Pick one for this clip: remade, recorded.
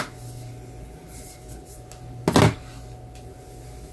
recorded